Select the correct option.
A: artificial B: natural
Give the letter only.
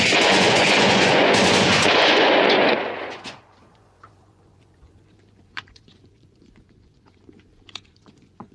A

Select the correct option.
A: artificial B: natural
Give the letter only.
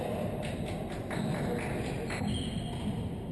B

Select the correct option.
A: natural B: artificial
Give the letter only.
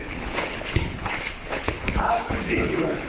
B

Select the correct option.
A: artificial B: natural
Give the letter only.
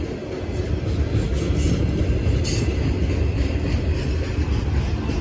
B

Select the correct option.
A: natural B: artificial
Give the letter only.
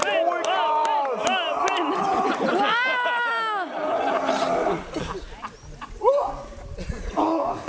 A